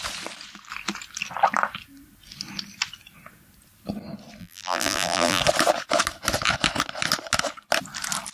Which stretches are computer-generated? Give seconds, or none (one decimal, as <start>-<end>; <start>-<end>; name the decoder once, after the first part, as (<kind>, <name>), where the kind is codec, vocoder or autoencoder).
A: 4.4-5.4 (vocoder, BigVGAN v2)